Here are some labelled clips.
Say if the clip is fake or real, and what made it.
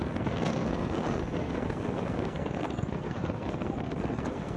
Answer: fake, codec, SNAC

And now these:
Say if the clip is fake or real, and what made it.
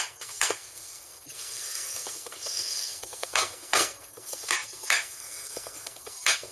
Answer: fake, codec, SNAC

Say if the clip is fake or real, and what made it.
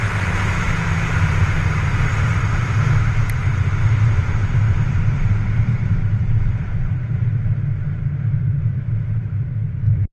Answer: fake, vocoder, BigVGAN v2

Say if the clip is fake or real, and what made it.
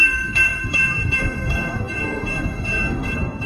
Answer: fake, codec, SNAC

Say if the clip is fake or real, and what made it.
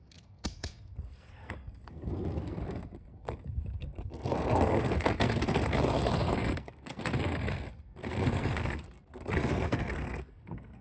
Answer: fake, codec, SNAC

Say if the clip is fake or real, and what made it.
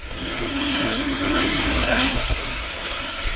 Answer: fake, codec, SNAC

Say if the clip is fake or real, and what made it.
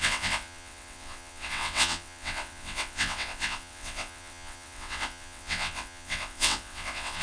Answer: fake, vocoder, WaveNeXt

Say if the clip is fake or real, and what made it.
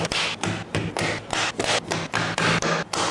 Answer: real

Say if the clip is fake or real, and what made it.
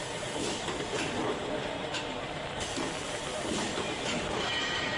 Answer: fake, vocoder, BigVGAN v2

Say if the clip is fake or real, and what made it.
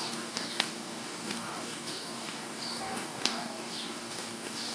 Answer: fake, codec, DAC